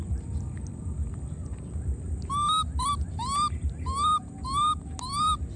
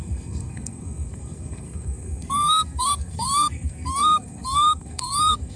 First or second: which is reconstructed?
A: second